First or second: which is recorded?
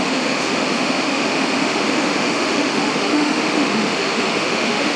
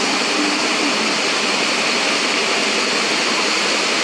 second